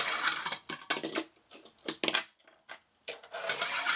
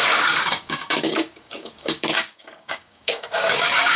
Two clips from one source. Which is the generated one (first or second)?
second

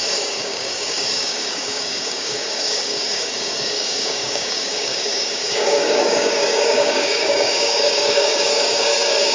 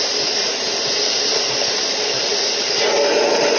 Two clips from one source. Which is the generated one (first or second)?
first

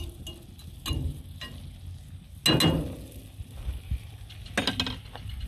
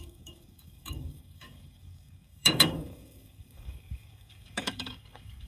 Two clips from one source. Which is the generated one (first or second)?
second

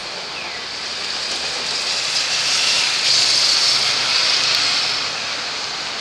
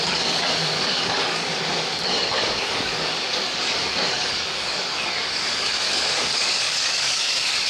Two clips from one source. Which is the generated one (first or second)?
second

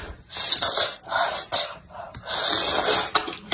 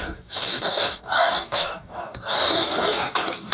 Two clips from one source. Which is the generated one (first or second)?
second